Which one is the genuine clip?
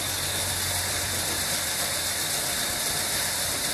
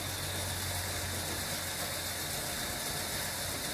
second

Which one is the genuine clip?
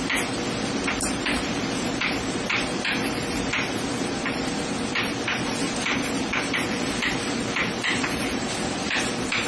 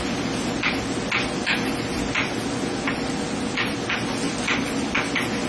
second